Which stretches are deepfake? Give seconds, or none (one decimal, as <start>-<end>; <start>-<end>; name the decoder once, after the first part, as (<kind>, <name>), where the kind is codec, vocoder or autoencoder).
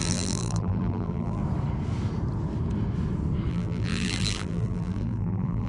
0.0-1.4 (vocoder, BigVGAN v2); 3.5-5.7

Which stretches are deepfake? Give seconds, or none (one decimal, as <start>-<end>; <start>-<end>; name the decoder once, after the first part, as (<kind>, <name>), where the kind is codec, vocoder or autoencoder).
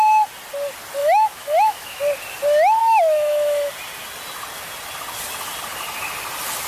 1.0-2.0 (autoencoder, DAC-VAE); 2.8-3.7